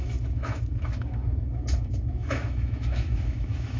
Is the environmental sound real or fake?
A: fake